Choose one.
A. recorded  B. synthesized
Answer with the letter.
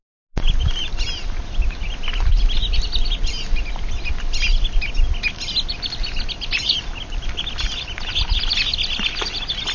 A